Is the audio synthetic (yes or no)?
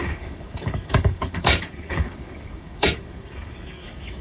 yes